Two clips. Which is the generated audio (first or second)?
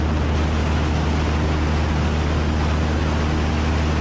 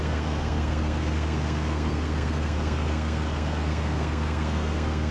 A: second